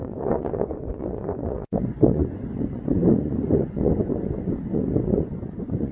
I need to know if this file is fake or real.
fake